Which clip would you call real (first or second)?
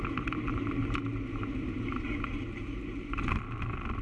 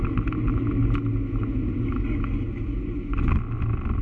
second